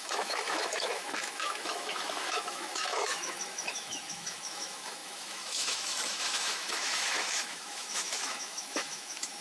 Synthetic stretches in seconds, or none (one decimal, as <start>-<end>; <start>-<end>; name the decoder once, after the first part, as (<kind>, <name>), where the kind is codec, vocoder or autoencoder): 0.0-9.4 (autoencoder, DAC-VAE)